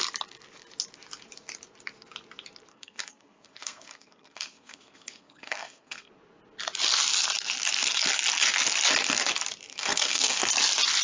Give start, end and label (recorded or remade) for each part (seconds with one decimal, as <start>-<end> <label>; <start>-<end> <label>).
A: 0.0-2.7 recorded; 2.7-6.1 remade; 6.1-9.7 recorded; 9.7-10.4 remade; 10.4-11.0 recorded